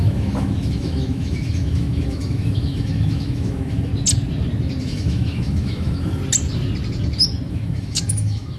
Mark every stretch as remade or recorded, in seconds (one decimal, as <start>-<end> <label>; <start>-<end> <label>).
0.0-3.9 remade; 3.9-4.8 recorded; 4.8-6.2 remade; 6.2-7.5 recorded; 7.5-8.6 remade